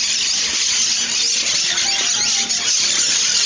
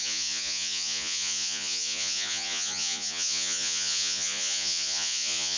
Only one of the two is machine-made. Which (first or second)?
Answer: second